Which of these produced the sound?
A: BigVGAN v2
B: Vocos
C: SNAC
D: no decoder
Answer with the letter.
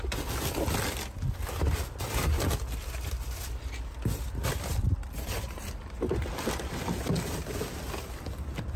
D